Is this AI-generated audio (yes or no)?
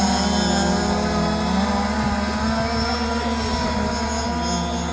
no